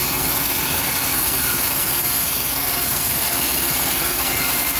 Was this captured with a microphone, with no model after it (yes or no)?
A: no